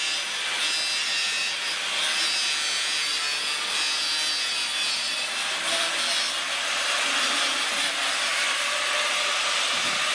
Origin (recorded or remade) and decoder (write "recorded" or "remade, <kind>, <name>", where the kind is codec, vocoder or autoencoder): recorded